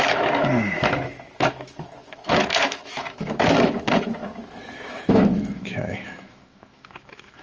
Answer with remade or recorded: remade